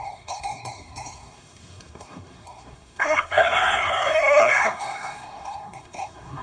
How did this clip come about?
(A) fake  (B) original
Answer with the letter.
A